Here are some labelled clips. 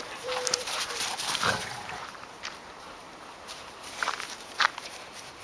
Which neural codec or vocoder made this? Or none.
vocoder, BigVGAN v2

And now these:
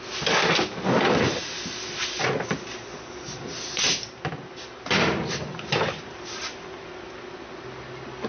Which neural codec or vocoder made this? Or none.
none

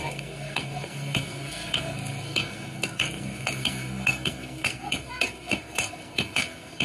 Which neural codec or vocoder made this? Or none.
codec, SNAC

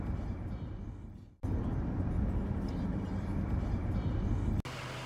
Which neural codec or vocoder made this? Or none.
none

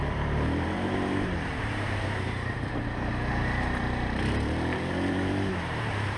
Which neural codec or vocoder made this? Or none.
vocoder, BigVGAN v2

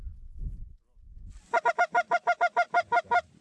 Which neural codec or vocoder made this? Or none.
none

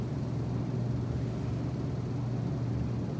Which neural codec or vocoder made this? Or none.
none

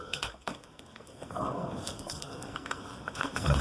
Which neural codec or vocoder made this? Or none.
codec, SNAC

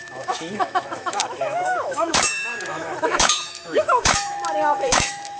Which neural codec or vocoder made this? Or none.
autoencoder, DAC-VAE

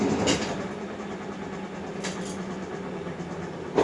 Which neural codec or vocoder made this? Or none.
none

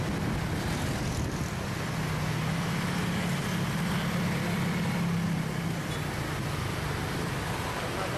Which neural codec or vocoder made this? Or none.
none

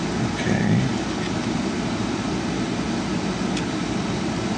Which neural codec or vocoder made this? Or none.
none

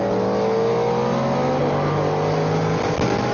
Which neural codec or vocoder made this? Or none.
none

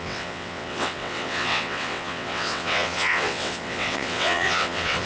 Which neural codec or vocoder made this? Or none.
vocoder, WaveNeXt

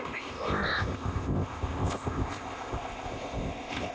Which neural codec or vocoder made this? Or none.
codec, ZipCodec